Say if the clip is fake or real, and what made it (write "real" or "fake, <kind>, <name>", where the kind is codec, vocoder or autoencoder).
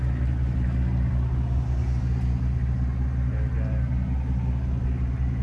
real